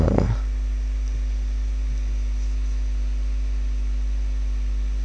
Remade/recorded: recorded